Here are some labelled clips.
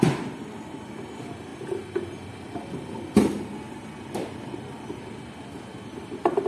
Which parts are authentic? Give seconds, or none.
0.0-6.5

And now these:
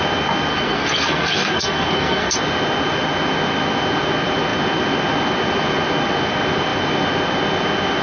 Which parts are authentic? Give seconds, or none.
0.0-0.5; 2.4-8.0

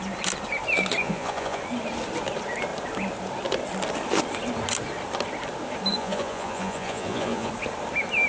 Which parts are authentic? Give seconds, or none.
0.0-1.0; 1.6-5.9; 7.5-8.3

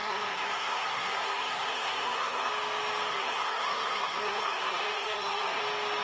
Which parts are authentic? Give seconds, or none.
2.5-3.1; 5.6-6.0

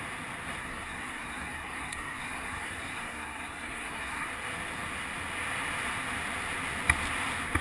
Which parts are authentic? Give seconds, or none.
0.0-0.6; 4.3-7.6